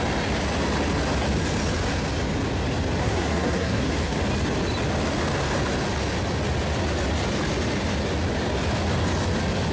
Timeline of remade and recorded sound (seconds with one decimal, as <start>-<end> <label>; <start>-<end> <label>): 0.0-3.0 recorded; 3.0-4.2 remade; 4.2-9.7 recorded